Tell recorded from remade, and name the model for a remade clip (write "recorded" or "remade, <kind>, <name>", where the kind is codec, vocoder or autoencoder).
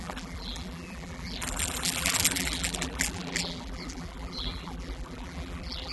remade, vocoder, BigVGAN v2